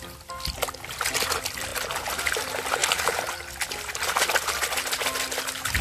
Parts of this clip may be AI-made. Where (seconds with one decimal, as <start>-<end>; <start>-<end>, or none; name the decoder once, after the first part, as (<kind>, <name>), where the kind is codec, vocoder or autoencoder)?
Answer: none